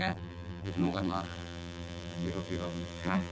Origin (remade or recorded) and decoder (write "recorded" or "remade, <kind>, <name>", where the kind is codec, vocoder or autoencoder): remade, vocoder, BigVGAN v2